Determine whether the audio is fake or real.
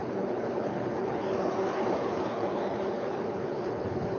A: fake